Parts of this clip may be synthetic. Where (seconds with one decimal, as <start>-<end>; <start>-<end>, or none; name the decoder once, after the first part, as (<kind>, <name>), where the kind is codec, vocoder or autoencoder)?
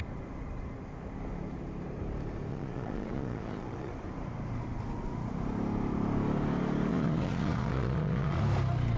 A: 2.5-3.9 (vocoder, Vocos); 6.9-8.4